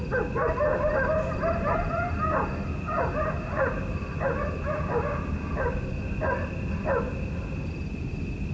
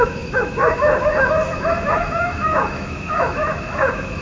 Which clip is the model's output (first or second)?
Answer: second